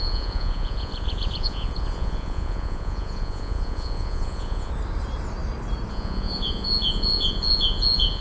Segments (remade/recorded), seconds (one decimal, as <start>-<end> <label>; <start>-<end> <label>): 0.0-4.7 remade; 4.7-5.9 recorded; 5.9-8.2 remade